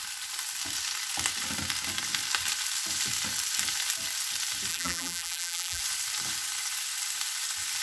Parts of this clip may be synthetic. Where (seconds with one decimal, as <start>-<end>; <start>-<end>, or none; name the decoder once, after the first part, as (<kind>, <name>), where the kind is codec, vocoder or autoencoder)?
4.7-5.8 (vocoder, BigVGAN v2)